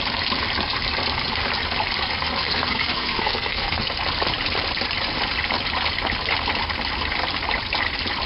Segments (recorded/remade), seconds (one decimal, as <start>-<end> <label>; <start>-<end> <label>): 0.0-2.4 recorded; 2.4-3.9 remade; 3.9-8.3 recorded